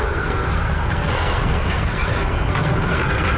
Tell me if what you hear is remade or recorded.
remade